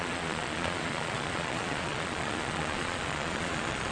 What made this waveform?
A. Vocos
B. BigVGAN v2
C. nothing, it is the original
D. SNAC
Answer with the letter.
A